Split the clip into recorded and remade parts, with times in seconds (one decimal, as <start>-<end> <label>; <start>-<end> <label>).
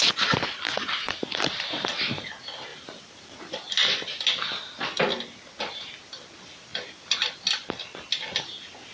0.0-0.7 recorded; 0.7-2.3 remade; 2.3-2.7 recorded; 2.7-4.2 remade; 4.2-8.9 recorded